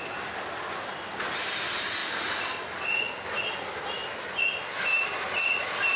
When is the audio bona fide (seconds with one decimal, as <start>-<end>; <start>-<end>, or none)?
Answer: 0.0-6.0